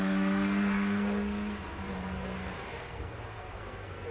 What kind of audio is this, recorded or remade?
remade